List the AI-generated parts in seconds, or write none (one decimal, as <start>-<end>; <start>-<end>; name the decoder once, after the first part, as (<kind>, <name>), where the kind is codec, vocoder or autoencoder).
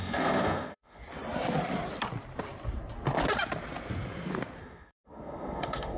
0.0-1.0 (codec, SNAC); 4.6-6.0